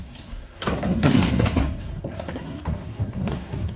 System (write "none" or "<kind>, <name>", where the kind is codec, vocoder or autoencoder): codec, SNAC